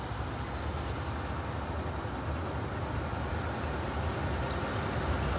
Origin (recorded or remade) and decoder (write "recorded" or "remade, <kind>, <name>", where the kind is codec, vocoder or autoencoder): recorded